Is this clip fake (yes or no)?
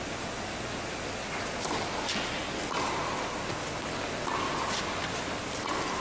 no